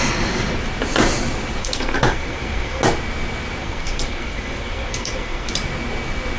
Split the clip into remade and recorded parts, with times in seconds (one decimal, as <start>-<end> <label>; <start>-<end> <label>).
0.0-1.6 recorded; 1.6-2.8 remade; 2.8-3.6 recorded; 3.6-5.5 remade; 5.5-6.4 recorded